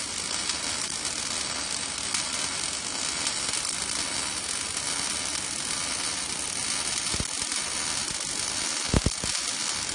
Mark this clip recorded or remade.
recorded